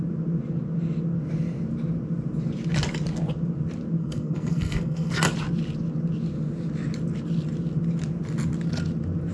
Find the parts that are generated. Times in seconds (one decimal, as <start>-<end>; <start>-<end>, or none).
4.0-5.1